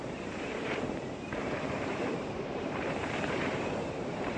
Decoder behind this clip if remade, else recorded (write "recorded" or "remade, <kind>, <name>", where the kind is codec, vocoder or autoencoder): remade, vocoder, BigVGAN v2